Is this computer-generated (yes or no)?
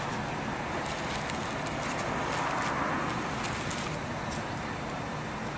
no